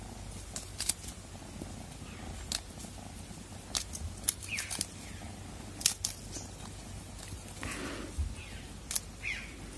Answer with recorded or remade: recorded